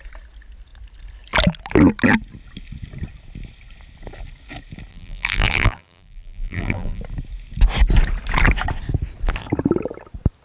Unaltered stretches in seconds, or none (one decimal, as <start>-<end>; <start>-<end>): 0.0-4.9; 7.0-10.4